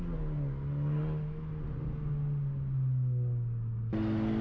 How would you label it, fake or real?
real